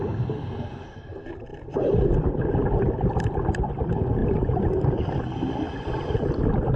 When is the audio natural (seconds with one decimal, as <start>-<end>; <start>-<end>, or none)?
0.0-6.8